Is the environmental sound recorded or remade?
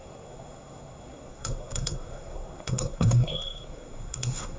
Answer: remade